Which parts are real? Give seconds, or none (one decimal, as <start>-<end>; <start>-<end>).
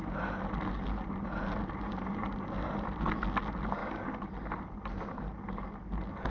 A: 0.0-6.3